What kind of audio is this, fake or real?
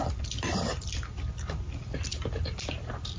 real